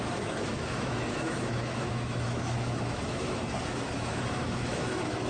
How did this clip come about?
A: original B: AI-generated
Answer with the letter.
B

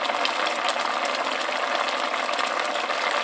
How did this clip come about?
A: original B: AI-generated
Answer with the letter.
A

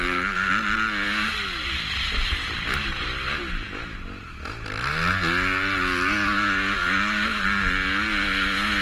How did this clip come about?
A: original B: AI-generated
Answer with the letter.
A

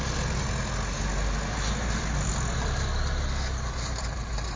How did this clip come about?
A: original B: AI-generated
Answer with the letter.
A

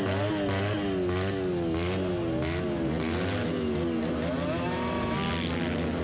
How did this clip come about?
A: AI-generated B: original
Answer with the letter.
B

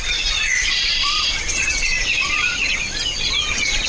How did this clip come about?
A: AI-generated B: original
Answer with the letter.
A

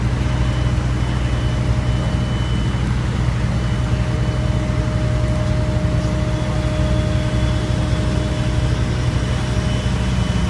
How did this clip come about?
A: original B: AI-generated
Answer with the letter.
A